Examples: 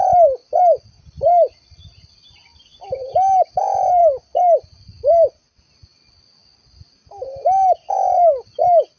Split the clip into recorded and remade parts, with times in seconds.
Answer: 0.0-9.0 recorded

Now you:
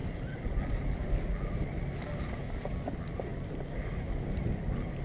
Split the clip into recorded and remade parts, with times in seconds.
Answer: 0.0-5.0 recorded

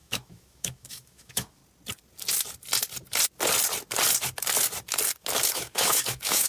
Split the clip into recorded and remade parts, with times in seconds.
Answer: 0.0-1.6 remade; 1.6-5.5 recorded; 5.5-6.5 remade

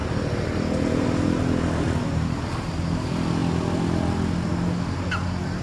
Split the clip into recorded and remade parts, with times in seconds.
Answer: 0.0-5.6 recorded

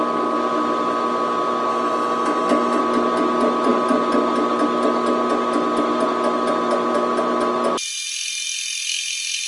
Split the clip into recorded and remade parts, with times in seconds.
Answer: 0.0-1.7 recorded; 1.7-2.8 remade; 2.8-9.5 recorded

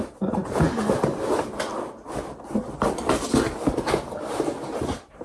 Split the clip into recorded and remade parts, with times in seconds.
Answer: 0.0-5.2 recorded

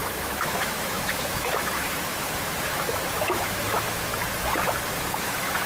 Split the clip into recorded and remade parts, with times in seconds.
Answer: 0.0-4.1 remade; 4.1-5.2 recorded; 5.2-5.7 remade